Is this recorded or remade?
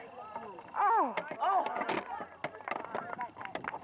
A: recorded